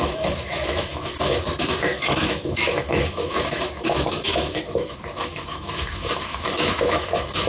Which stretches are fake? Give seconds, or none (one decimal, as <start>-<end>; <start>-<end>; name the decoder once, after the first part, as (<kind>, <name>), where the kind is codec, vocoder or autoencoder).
0.0-7.5 (autoencoder, DAC-VAE)

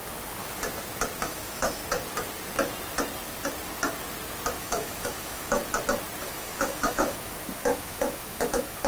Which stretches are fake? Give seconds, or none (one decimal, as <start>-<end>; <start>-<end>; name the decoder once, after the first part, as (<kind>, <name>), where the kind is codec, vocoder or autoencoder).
1.2-1.8 (autoencoder, DAC-VAE); 4.6-5.6; 6.2-8.9

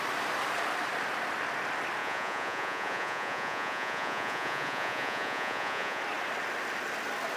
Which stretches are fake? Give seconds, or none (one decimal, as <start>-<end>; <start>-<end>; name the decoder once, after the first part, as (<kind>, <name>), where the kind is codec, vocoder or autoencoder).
2.0-6.0 (vocoder, Vocos)

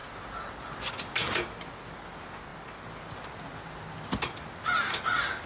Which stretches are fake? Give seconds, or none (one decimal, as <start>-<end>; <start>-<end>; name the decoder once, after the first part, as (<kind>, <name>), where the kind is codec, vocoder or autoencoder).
none